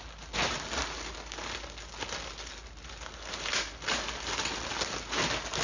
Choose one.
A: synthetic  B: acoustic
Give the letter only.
B